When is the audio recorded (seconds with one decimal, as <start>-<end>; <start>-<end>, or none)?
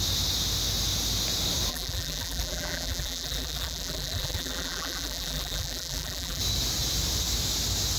0.0-1.7; 6.4-8.0